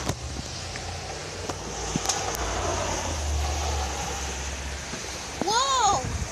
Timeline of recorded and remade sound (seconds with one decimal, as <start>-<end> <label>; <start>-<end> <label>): 0.0-5.0 recorded; 5.0-6.3 remade